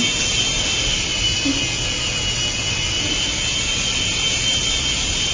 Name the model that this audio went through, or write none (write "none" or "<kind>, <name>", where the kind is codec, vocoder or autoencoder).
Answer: none